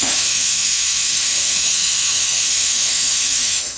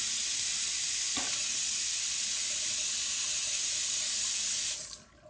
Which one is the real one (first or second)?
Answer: second